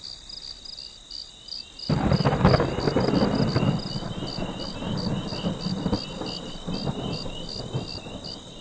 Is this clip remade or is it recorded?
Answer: recorded